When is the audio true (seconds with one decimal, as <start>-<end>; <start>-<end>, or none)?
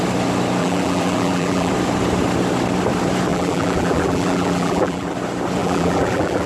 0.0-0.6; 1.7-3.3; 5.1-5.6